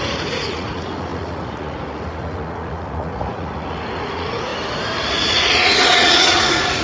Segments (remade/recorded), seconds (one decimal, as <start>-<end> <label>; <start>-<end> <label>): 0.0-4.5 remade; 4.5-5.1 recorded; 5.1-6.8 remade